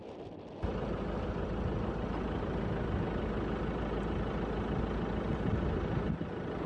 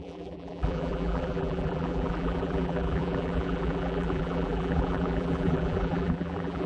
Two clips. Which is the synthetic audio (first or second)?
second